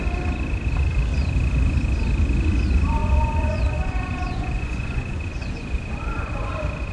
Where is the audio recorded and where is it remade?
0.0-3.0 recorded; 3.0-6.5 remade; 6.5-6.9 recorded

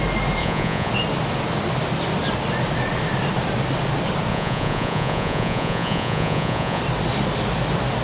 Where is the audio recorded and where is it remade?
0.0-0.4 recorded; 0.4-0.9 remade; 0.9-4.3 recorded; 4.3-6.8 remade; 6.8-8.0 recorded

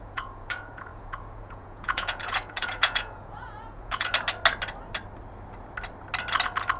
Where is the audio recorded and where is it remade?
0.0-4.1 remade; 4.1-6.8 recorded

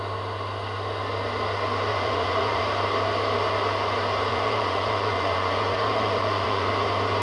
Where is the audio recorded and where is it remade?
0.0-1.9 recorded; 1.9-2.6 remade; 2.6-4.3 recorded; 4.3-6.7 remade; 6.7-7.2 recorded

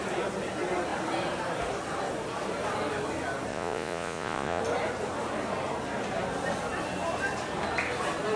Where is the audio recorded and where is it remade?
0.0-3.5 recorded; 3.5-4.6 remade; 4.6-8.4 recorded

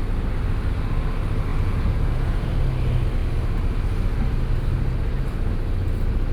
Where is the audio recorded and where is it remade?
0.0-1.5 recorded; 1.5-2.5 remade; 2.5-6.3 recorded

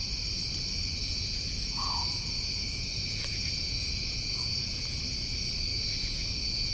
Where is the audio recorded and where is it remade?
0.0-1.0 recorded; 1.0-5.0 remade; 5.0-5.7 recorded; 5.7-6.7 remade

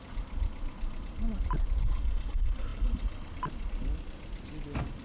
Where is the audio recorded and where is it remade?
0.0-5.0 recorded